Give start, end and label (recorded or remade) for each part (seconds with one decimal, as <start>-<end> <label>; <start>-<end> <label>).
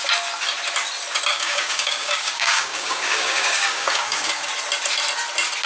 0.0-1.3 recorded; 1.3-4.5 remade; 4.5-5.7 recorded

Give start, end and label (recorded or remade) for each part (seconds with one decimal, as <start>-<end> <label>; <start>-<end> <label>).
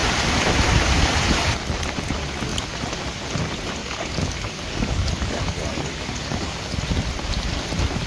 0.0-3.8 recorded; 3.8-6.6 remade; 6.6-8.1 recorded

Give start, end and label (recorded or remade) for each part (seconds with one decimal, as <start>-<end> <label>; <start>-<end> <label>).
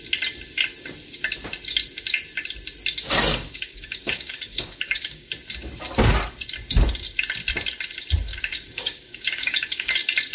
0.0-3.3 recorded; 3.3-5.3 remade; 5.3-8.3 recorded; 8.3-9.9 remade; 9.9-10.3 recorded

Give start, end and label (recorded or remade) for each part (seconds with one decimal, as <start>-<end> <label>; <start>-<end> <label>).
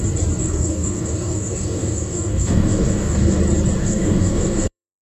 0.0-0.4 recorded; 0.4-3.4 remade; 3.4-3.8 recorded; 3.8-5.0 remade